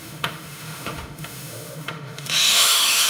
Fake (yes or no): yes